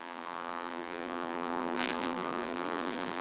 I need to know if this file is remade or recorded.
remade